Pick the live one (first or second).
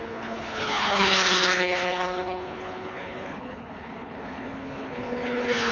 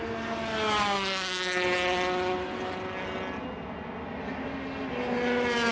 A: second